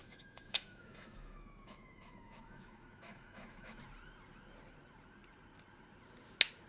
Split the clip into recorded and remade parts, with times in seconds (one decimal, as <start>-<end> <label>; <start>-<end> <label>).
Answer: 0.0-3.8 remade; 3.8-6.7 recorded